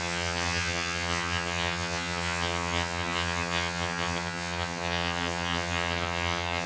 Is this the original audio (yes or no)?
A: no